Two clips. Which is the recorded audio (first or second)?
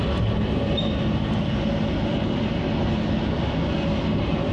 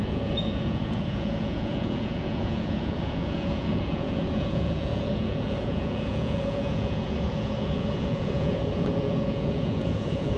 first